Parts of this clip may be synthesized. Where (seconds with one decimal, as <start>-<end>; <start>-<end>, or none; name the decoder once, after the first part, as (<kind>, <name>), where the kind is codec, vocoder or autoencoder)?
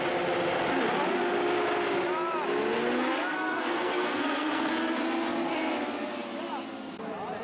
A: 3.3-4.7 (codec, SNAC)